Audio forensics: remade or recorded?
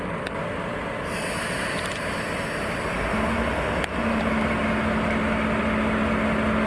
recorded